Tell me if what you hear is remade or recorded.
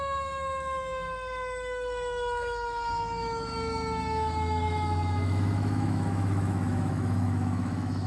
remade